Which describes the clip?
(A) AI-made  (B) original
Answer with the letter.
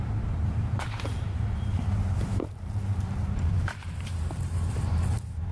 A